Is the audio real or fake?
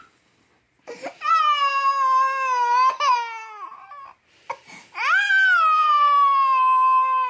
real